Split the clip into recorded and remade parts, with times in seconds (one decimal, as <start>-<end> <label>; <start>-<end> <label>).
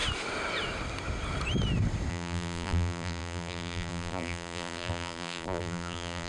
0.0-2.1 recorded; 2.1-6.3 remade